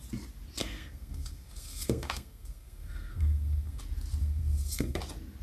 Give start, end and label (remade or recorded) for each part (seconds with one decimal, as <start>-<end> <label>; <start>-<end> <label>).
0.0-0.6 recorded; 0.6-3.8 remade; 3.8-4.2 recorded; 4.2-5.0 remade; 5.0-5.4 recorded